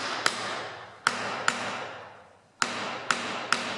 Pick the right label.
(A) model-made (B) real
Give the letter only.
B